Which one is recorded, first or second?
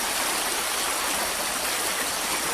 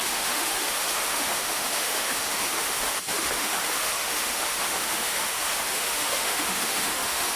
first